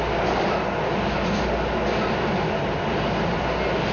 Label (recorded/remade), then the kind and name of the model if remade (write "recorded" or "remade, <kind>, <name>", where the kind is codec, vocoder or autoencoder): recorded